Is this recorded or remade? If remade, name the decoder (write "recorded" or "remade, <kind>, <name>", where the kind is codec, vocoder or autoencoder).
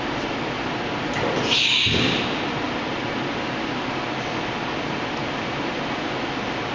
recorded